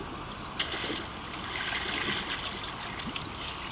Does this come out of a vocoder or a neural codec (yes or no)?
no